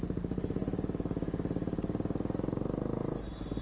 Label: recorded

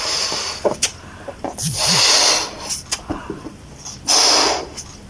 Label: remade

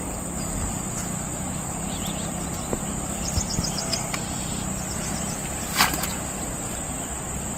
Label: recorded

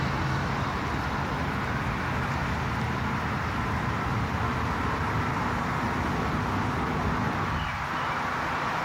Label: recorded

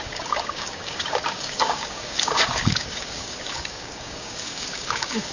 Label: remade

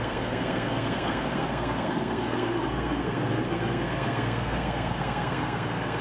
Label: remade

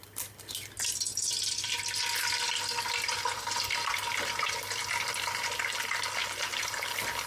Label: recorded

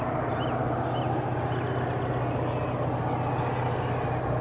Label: recorded